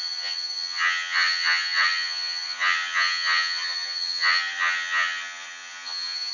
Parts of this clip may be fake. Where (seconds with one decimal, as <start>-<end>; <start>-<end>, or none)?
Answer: 0.0-6.3